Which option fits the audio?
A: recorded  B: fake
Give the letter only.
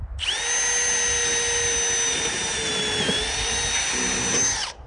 A